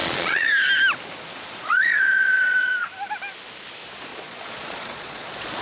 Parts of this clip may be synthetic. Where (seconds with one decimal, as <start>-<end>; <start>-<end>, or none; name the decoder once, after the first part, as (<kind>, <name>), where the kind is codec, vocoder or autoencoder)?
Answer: 0.0-0.5 (vocoder, Vocos); 1.3-2.9; 4.1-5.6